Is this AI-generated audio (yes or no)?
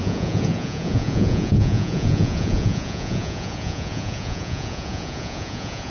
yes